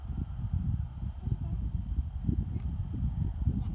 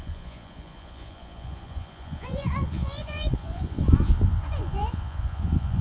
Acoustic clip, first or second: first